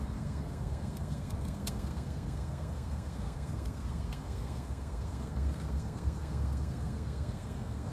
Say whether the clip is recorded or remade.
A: remade